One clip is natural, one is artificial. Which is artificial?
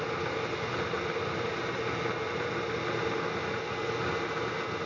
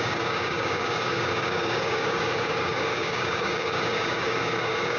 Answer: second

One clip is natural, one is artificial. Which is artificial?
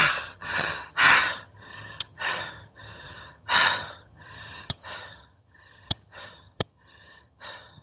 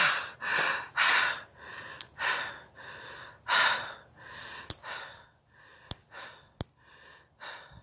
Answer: first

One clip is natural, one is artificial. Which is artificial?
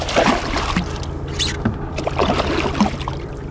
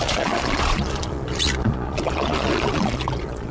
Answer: second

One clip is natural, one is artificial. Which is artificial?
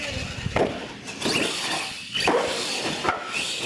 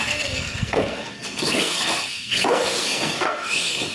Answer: second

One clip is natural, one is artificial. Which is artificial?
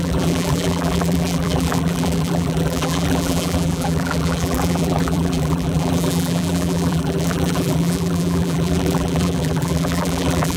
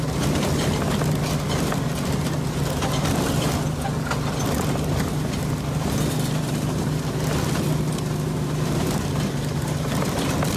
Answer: first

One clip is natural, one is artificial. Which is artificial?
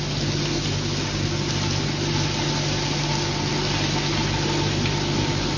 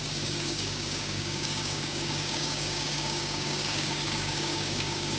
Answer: second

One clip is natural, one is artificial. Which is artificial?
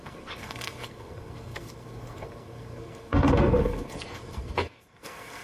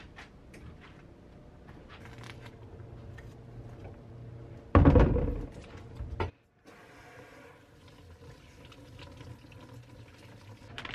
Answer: first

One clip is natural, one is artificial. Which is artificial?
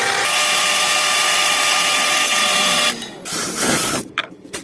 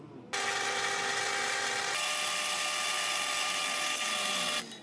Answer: first